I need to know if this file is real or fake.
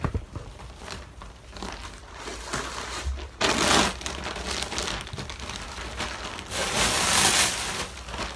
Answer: real